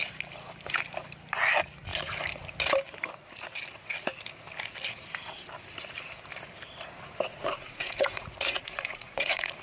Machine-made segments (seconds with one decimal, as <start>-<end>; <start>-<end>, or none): 7.3-9.6